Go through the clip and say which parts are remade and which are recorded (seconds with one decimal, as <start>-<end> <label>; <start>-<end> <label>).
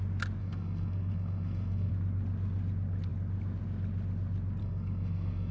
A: 0.0-0.4 recorded; 0.4-1.9 remade; 1.9-4.6 recorded; 4.6-5.5 remade